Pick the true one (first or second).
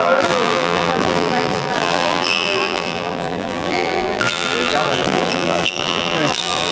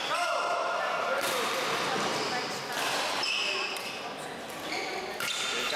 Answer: second